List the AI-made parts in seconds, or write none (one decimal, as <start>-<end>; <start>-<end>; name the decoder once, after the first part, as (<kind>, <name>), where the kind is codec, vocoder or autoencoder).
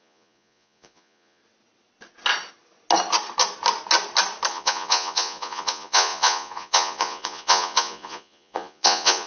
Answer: 0.0-1.4 (vocoder, Vocos); 4.5-9.3